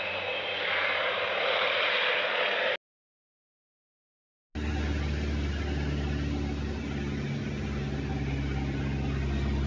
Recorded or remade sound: recorded